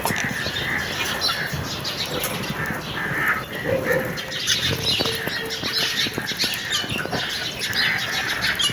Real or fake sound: real